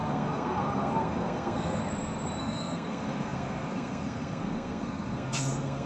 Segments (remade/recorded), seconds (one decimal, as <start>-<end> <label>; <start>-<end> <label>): 0.0-1.8 remade; 1.8-2.4 recorded; 2.4-5.9 remade